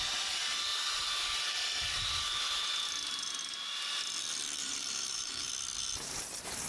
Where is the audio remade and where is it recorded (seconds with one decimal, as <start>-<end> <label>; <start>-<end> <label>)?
0.0-4.6 recorded; 4.6-5.5 remade; 5.5-6.7 recorded